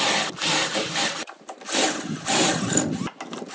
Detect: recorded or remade remade